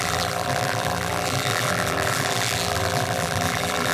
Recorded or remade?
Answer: remade